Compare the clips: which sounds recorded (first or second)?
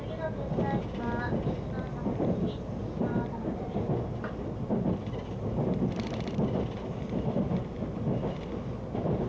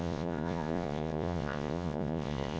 first